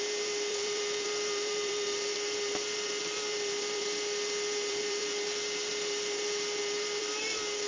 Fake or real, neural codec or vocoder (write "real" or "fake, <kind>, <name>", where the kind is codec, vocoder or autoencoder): fake, vocoder, BigVGAN v2